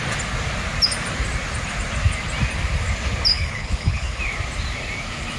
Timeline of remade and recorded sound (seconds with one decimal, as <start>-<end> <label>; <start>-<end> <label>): 0.0-3.3 recorded; 3.3-4.2 remade; 4.2-5.4 recorded